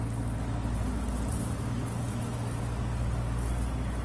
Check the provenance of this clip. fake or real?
real